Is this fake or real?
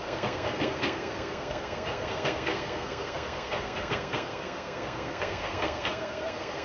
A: fake